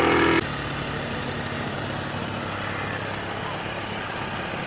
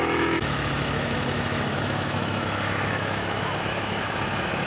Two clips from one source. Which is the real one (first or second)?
first